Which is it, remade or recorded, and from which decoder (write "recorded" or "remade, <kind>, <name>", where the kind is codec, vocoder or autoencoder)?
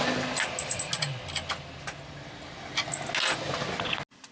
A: recorded